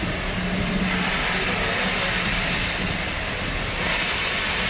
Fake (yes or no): no